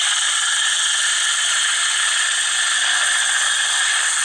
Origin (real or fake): real